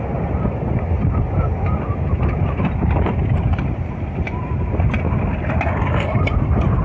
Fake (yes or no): no